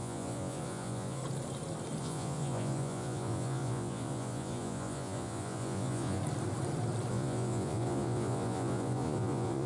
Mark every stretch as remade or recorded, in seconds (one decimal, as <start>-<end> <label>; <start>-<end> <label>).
0.0-1.2 remade; 1.2-2.0 recorded; 2.0-6.2 remade; 6.2-7.1 recorded; 7.1-9.7 remade